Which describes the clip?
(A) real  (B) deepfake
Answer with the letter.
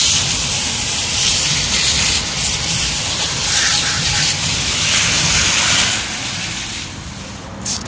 A